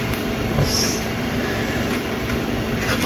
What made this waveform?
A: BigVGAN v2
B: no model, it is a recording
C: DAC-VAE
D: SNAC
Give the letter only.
A